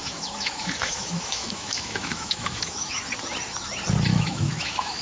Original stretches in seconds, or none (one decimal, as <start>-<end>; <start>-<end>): 3.0-4.1